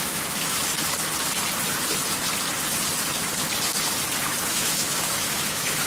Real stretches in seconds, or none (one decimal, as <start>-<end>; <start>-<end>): 0.7-4.2